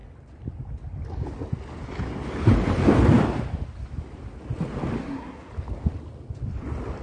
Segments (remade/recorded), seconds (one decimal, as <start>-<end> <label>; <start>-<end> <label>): 0.0-5.0 recorded; 5.0-5.5 remade; 5.5-7.0 recorded